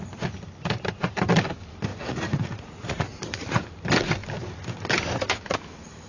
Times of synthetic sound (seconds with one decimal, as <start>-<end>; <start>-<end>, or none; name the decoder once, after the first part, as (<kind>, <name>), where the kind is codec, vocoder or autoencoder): 1.9-3.6 (vocoder, Vocos)